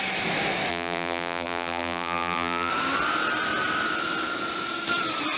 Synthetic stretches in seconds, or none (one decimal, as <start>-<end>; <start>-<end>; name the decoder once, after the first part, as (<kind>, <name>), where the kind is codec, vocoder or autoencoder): 0.7-2.7 (vocoder, BigVGAN v2)